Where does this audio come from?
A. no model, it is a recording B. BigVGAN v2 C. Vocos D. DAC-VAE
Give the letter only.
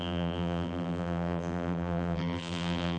B